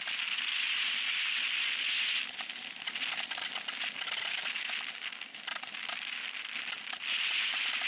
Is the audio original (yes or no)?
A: yes